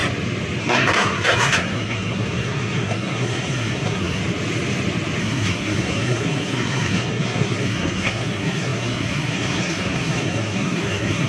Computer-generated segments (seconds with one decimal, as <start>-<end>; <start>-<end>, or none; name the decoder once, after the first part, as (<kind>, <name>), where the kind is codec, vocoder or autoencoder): 0.6-4.2 (codec, SNAC); 5.2-11.3